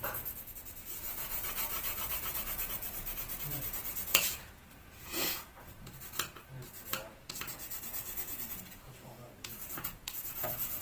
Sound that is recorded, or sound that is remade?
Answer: remade